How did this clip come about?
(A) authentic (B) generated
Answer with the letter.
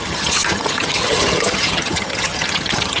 B